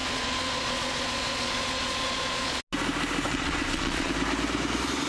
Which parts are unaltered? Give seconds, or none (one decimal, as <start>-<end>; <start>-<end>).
2.6-3.3; 4.1-5.1